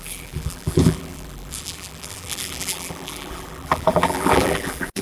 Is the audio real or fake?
fake